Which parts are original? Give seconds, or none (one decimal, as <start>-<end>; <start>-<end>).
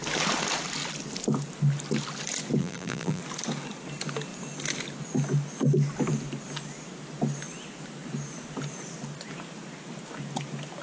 0.0-2.6; 3.2-10.8